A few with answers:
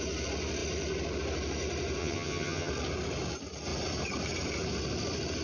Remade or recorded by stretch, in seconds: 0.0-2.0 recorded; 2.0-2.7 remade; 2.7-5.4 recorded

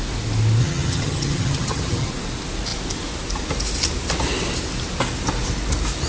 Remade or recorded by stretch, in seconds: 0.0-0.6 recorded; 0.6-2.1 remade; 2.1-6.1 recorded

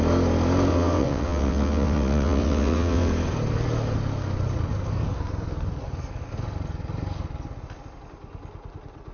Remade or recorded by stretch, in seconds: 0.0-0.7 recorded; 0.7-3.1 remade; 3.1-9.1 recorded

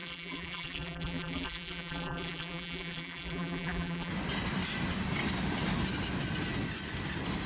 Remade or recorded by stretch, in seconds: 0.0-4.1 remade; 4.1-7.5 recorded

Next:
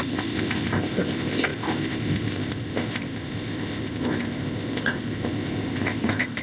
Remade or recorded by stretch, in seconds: 0.0-6.4 remade

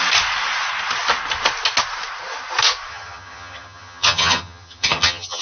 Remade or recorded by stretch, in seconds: 0.0-2.9 recorded; 2.9-5.4 remade

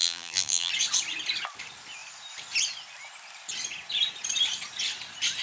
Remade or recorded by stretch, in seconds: 0.0-0.7 remade; 0.7-5.4 recorded